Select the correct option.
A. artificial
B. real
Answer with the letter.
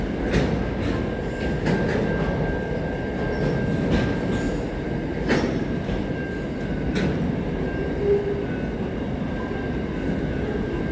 B